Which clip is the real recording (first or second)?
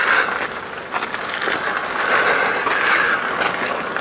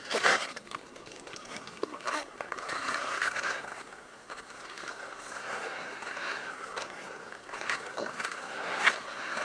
first